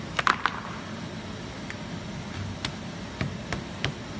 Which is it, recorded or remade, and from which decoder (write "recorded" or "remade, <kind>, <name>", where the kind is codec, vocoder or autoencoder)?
recorded